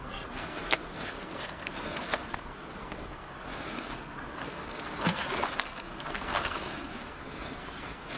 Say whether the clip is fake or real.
fake